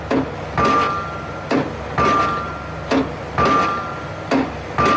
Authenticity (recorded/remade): recorded